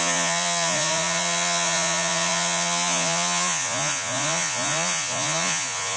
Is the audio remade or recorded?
remade